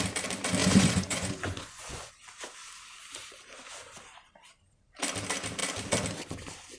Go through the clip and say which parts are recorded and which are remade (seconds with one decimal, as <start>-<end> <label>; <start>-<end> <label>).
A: 0.0-0.6 recorded; 0.6-2.1 remade; 2.1-6.8 recorded